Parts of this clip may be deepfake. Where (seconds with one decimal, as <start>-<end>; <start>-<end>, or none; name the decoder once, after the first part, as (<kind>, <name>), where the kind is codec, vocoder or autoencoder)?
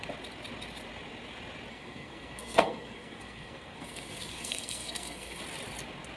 1.7-5.4 (codec, SNAC)